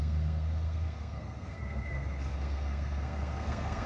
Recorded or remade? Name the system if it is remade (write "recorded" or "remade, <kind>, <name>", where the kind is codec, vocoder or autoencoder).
remade, codec, SNAC